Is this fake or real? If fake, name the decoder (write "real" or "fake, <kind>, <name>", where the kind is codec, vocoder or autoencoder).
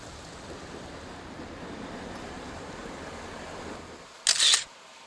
real